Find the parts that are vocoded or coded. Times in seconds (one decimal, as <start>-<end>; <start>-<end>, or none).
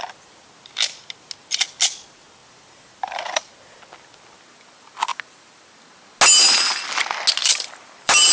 2.4-3.4; 7.4-8.3